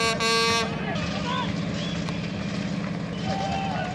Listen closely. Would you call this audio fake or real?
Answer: real